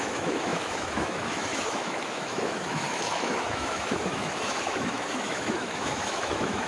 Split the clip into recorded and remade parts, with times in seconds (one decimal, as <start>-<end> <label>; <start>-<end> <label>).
0.0-6.7 remade